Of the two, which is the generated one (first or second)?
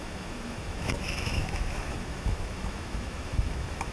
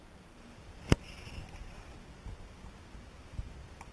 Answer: first